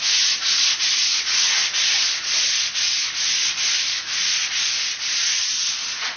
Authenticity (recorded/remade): recorded